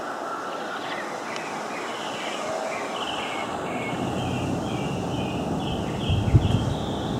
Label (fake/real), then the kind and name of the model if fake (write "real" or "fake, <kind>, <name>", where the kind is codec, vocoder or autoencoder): real